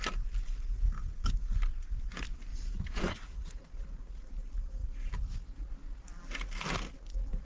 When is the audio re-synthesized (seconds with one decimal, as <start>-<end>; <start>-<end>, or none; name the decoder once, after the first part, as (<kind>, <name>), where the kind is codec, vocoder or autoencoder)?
2.5-3.8 (vocoder, Vocos)